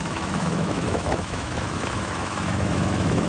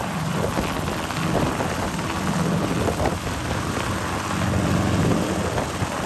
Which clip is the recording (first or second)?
second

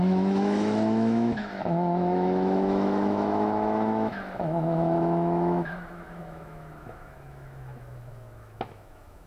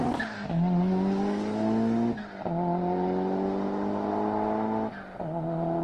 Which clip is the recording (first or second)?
second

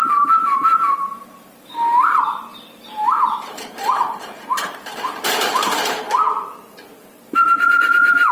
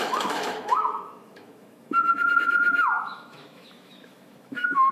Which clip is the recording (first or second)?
first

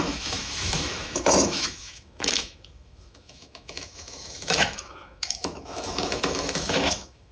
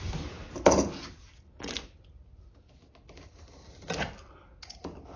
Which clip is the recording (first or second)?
second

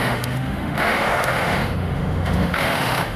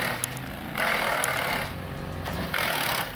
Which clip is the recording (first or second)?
second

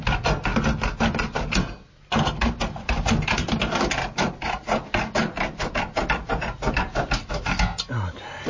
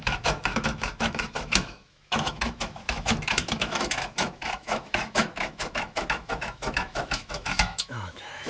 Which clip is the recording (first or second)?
first